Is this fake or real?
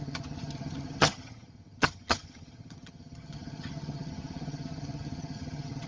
fake